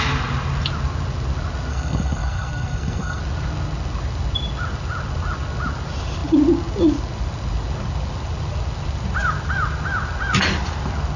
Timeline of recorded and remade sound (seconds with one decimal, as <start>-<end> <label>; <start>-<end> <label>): 0.0-1.7 recorded; 1.7-3.2 remade; 3.2-11.2 recorded